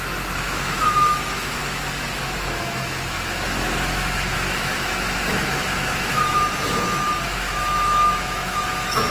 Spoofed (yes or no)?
yes